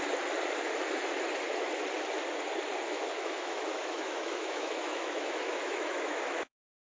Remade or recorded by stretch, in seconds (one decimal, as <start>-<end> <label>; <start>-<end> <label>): 0.0-2.9 recorded; 2.9-6.9 remade